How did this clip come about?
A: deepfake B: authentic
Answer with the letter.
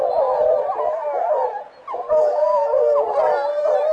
B